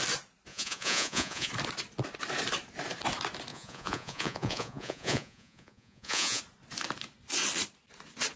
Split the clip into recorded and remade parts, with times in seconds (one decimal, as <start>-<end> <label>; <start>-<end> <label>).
0.0-0.5 recorded; 0.5-1.5 remade; 1.5-3.5 recorded; 3.5-6.4 remade; 6.4-8.4 recorded